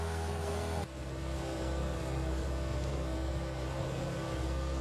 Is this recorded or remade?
remade